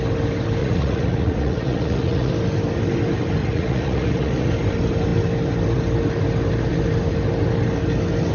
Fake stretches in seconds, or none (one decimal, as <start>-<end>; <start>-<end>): 0.6-2.3; 3.4-4.5